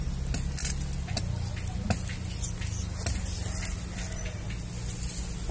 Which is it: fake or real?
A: real